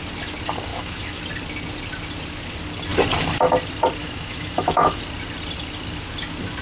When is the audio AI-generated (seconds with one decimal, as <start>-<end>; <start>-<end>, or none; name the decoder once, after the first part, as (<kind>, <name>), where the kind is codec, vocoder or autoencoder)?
0.7-1.2 (autoencoder, DAC-VAE); 4.0-5.0